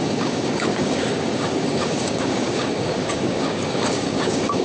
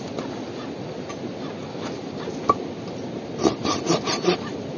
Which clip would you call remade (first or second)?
first